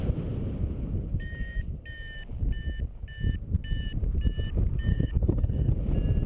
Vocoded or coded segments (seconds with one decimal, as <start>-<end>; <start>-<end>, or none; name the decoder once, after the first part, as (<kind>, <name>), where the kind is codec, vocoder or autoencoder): 4.9-5.7 (codec, HILCodec)